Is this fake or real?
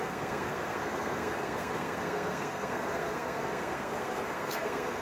fake